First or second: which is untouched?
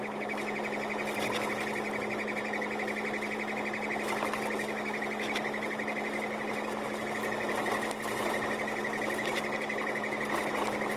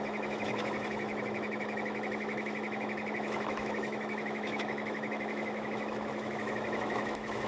first